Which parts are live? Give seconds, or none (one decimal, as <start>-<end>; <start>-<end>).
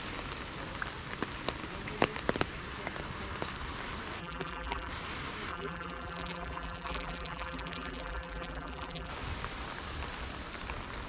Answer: 0.0-4.2; 4.9-5.5; 9.1-11.1